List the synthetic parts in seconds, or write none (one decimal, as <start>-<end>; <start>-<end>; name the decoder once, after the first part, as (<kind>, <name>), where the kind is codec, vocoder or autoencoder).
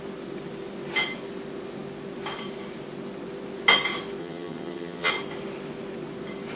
4.2-5.1 (vocoder, HiFi-GAN)